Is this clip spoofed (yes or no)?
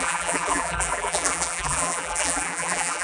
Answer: yes